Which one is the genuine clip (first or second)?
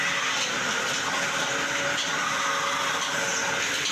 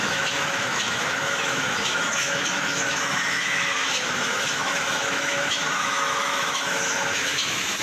first